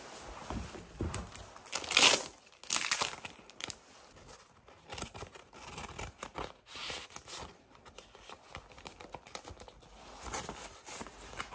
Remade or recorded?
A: recorded